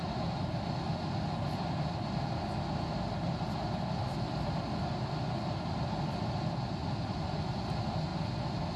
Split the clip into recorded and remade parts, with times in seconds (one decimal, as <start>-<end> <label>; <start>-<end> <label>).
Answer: 0.0-8.8 recorded